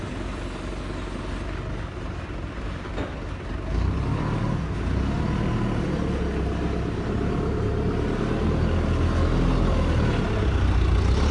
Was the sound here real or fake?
real